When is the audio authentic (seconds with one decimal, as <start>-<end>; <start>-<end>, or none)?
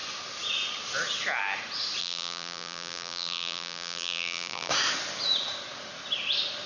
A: 0.0-2.0; 4.7-6.7